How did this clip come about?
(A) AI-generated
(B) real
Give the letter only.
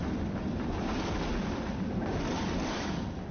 A